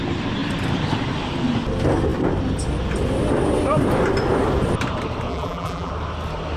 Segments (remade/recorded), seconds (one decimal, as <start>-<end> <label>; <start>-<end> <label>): 0.0-5.3 recorded; 5.3-5.9 remade; 5.9-6.6 recorded